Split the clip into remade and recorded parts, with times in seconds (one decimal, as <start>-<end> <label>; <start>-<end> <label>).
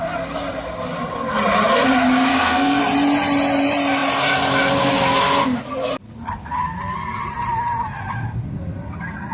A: 0.0-2.3 recorded; 2.3-2.8 remade; 2.8-9.3 recorded